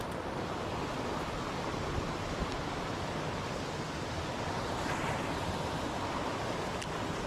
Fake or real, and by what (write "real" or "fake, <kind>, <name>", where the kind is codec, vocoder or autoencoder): real